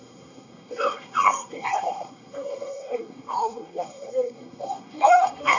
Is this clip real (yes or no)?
no